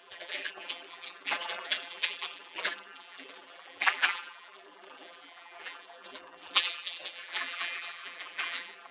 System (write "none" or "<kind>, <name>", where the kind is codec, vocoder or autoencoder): vocoder, BigVGAN v2